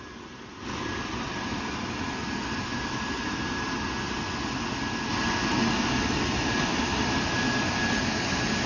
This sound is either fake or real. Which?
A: real